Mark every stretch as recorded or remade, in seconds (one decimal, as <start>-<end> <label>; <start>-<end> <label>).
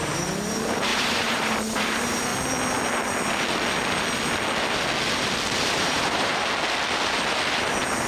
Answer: 0.0-2.3 remade; 2.3-5.6 recorded; 5.6-6.3 remade; 6.3-8.1 recorded